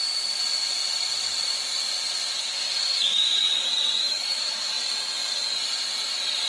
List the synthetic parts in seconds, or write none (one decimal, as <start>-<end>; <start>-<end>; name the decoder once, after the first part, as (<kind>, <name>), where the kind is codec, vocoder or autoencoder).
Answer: 2.4-3.5 (autoencoder, DAC-VAE); 4.0-4.7